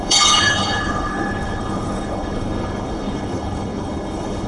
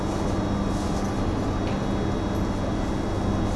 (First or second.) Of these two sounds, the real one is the second